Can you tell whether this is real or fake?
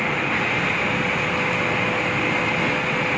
real